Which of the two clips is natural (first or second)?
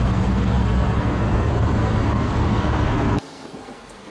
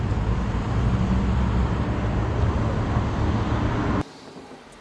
second